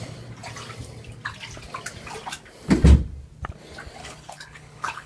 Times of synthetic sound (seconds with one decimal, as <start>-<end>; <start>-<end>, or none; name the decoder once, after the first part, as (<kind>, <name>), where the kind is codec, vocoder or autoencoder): 4.0-5.1 (codec, HILCodec)